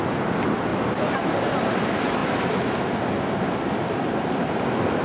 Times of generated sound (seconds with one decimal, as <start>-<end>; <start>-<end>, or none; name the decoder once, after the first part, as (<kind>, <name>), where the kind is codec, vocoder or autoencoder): none